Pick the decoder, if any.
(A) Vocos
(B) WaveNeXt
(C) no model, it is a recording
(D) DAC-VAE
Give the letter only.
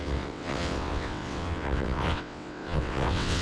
B